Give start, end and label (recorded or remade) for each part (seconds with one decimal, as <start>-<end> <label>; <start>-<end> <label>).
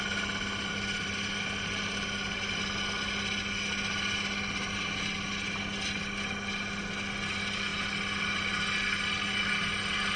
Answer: 0.0-10.2 recorded